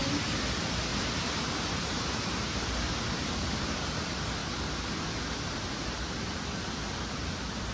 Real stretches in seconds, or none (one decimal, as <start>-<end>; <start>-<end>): 0.0-0.9; 3.8-7.7